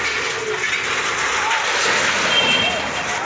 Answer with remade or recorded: recorded